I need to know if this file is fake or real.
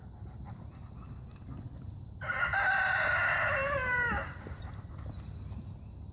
real